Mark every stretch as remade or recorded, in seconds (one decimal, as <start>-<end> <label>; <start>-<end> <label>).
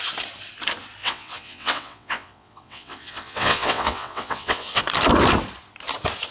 0.0-1.0 recorded; 1.0-4.8 remade; 4.8-6.3 recorded